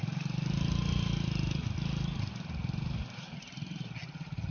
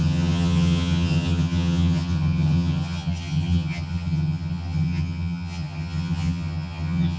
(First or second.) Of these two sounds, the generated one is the second